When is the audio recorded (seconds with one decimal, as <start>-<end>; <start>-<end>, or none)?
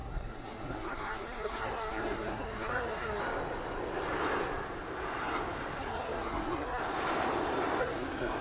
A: 3.2-5.8; 6.8-7.8